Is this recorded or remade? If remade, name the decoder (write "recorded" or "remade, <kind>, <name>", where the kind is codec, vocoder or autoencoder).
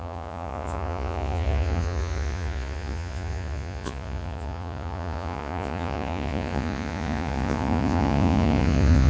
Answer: remade, vocoder, Vocos